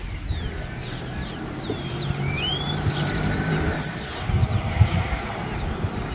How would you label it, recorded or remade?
remade